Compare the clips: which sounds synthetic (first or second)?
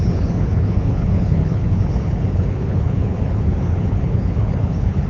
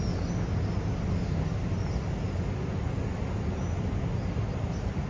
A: first